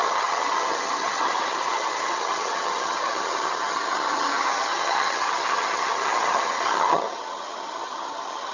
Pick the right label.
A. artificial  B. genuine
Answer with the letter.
A